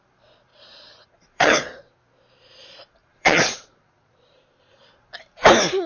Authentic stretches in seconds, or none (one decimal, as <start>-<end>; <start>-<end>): 0.0-0.5; 2.0-3.0; 5.0-5.9